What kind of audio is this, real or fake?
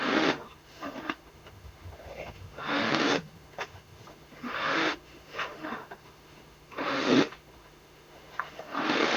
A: fake